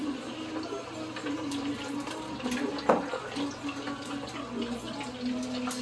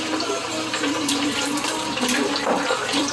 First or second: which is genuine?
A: first